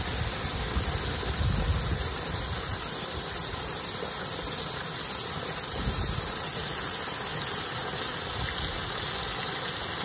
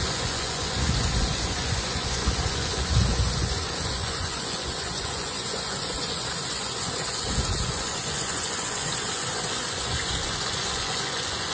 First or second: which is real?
first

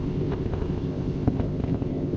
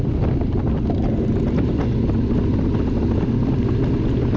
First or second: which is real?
second